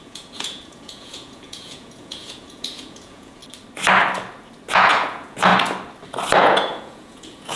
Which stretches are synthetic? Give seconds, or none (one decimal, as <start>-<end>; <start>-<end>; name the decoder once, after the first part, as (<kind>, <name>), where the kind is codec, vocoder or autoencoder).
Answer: 0.0-3.4 (vocoder, Vocos); 4.7-5.5; 6.4-7.6